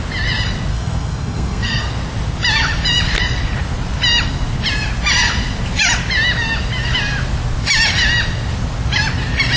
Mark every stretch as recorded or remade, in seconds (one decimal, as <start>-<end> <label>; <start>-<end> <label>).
0.0-0.7 recorded; 0.7-1.9 remade; 1.9-9.6 recorded